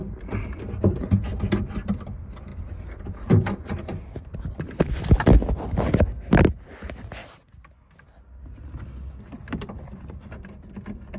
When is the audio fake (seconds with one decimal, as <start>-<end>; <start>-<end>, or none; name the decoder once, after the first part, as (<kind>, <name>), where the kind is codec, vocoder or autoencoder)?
none

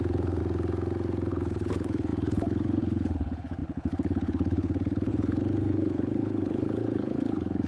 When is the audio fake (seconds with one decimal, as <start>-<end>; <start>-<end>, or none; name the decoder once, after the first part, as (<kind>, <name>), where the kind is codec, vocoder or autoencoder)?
0.0-0.4 (codec, HILCodec); 1.3-7.7

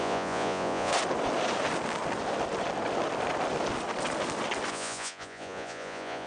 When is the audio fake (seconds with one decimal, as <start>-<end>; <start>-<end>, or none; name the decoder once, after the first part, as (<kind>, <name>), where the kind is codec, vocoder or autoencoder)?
0.0-0.9 (vocoder, Vocos); 4.7-6.3

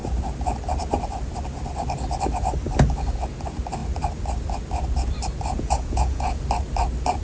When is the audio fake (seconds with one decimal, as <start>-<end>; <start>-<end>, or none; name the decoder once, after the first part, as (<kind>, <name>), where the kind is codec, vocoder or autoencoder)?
5.5-6.4 (vocoder, Vocos)

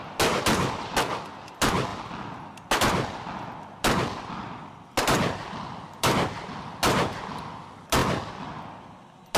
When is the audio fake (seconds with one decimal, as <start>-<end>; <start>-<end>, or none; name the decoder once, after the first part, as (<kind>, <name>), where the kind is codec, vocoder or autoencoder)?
none

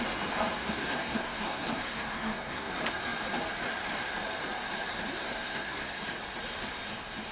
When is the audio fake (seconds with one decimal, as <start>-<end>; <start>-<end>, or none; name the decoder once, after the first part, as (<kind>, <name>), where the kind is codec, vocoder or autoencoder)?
0.6-2.7 (codec, SNAC); 5.2-6.0

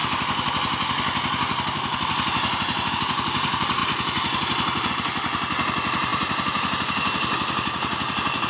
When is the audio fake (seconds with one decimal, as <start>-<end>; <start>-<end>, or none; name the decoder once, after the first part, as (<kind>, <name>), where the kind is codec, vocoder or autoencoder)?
2.9-8.5 (vocoder, BigVGAN v2)